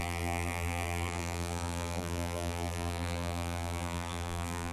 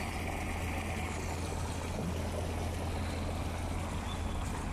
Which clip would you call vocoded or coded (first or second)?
first